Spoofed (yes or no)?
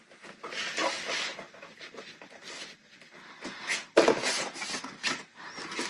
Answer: no